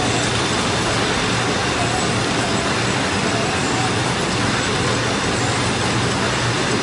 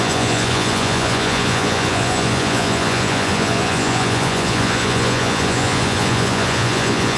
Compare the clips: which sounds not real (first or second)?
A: second